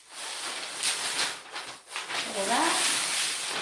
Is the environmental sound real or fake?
real